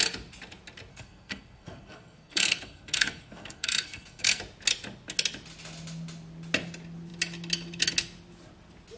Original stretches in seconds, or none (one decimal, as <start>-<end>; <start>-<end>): 0.0-0.9; 4.4-9.0